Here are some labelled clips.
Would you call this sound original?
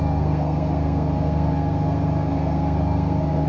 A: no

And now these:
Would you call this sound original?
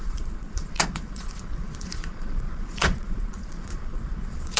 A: no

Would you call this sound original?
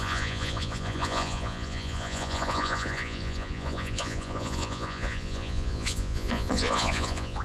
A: no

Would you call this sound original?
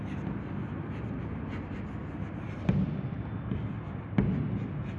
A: yes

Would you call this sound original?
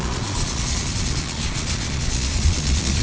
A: no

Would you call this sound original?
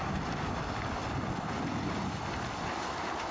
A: yes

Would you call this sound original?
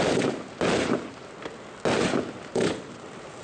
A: yes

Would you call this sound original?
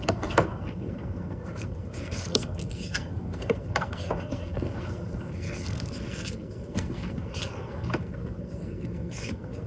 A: no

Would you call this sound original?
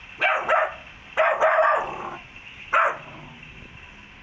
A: yes